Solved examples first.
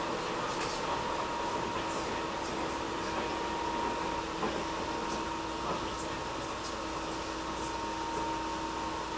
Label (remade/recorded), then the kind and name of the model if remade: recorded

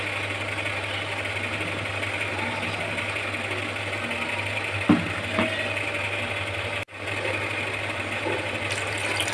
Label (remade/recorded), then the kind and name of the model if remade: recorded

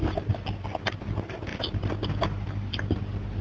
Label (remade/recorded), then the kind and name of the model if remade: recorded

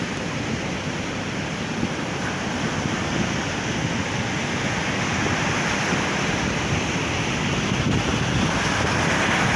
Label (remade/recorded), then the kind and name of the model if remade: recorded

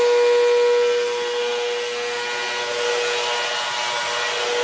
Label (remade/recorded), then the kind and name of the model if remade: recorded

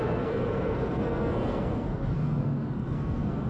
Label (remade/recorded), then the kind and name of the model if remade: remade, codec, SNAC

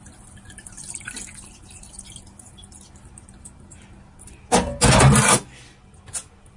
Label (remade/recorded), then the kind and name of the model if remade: recorded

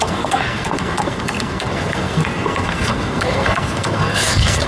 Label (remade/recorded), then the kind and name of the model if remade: remade, codec, SNAC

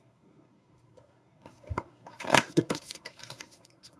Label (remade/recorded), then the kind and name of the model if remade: remade, codec, SNAC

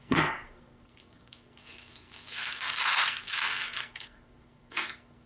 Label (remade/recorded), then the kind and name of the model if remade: remade, codec, SNAC